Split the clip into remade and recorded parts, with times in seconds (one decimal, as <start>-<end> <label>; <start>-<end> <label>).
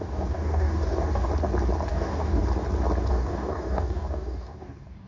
0.0-1.3 remade; 1.3-1.9 recorded; 1.9-2.4 remade; 2.4-3.1 recorded; 3.1-5.1 remade